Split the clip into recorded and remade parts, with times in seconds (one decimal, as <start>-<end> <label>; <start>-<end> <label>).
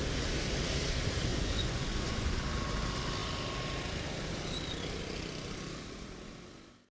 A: 0.0-1.3 recorded; 1.3-2.5 remade; 2.5-7.0 recorded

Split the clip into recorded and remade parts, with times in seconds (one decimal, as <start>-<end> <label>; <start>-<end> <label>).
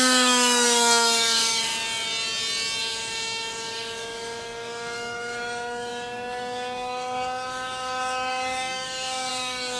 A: 0.0-1.7 remade; 1.7-2.8 recorded; 2.8-9.8 remade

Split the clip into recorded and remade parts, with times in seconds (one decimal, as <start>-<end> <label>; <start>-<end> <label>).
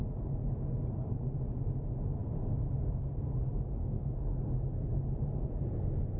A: 0.0-3.8 recorded; 3.8-4.4 remade; 4.4-6.2 recorded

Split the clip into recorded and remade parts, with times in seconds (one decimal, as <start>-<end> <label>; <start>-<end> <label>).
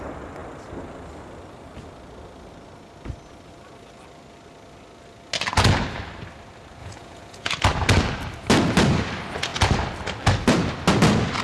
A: 0.0-6.8 recorded; 6.8-7.5 remade; 7.5-11.4 recorded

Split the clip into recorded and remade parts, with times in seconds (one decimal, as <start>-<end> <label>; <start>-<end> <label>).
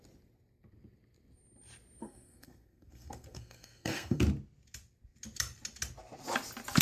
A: 0.0-2.0 recorded; 2.0-4.2 remade; 4.2-6.8 recorded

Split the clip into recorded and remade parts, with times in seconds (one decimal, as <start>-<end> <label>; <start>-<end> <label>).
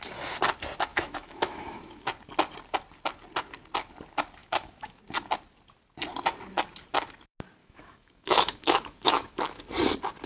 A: 0.0-0.9 recorded; 0.9-2.1 remade; 2.1-4.4 recorded; 4.4-5.0 remade; 5.0-7.6 recorded; 7.6-9.6 remade; 9.6-10.3 recorded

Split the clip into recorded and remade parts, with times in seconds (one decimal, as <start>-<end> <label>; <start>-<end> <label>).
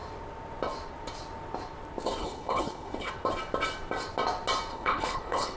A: 0.0-2.2 recorded; 2.2-3.1 remade; 3.1-4.7 recorded; 4.7-5.6 remade